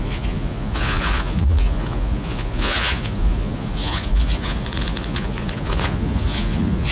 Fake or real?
fake